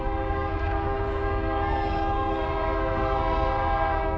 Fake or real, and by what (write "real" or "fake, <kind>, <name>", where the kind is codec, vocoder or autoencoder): fake, codec, SNAC